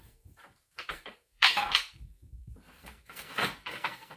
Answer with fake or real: fake